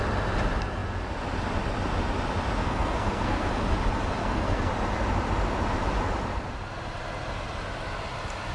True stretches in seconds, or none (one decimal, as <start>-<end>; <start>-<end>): 0.0-2.6; 3.5-4.2; 4.7-8.5